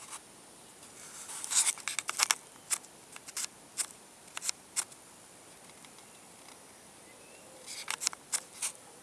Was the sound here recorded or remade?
recorded